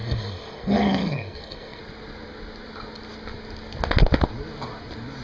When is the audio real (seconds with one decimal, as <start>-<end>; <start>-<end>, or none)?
1.8-5.2